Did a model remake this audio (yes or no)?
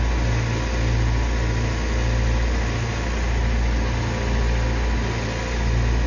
no